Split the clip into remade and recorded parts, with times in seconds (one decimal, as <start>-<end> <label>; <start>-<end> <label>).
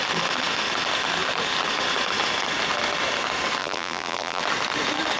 0.0-3.6 recorded; 3.6-4.4 remade; 4.4-5.2 recorded